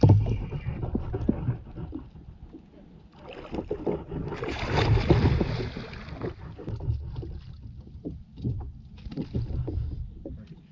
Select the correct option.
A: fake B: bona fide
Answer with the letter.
B